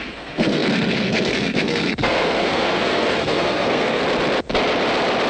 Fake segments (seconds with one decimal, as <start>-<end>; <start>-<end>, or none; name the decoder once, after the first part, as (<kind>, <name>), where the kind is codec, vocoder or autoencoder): 0.0-4.0 (codec, SNAC)